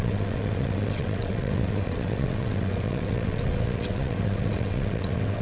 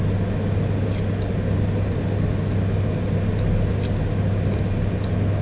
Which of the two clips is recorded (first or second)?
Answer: second